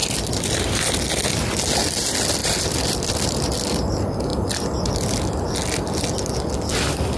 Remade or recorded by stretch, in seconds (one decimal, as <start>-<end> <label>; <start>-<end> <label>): 0.0-1.1 remade; 1.1-2.4 recorded; 2.4-3.5 remade; 3.5-4.3 recorded; 4.3-4.9 remade; 4.9-7.2 recorded